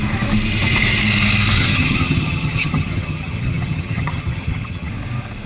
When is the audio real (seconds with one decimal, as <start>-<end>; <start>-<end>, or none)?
0.0-1.6; 4.9-5.5